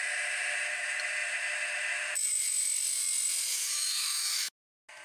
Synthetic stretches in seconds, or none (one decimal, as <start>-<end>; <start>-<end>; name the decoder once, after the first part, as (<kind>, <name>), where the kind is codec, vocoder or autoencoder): 3.5-4.5 (autoencoder, DAC-VAE)